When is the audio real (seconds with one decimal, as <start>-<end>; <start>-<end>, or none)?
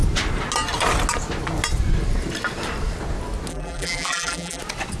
0.0-3.5; 4.6-5.0